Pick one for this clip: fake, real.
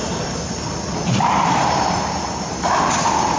fake